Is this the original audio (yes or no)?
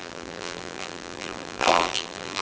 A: no